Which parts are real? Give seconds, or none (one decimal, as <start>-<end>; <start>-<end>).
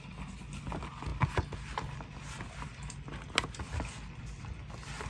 0.0-5.1